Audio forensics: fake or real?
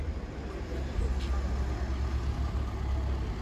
real